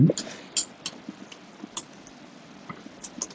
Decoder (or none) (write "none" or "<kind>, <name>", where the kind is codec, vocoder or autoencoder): none